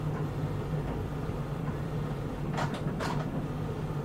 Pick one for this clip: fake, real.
real